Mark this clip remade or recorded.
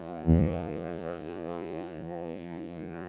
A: remade